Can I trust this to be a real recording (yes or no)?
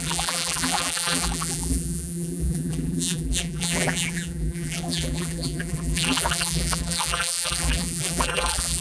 no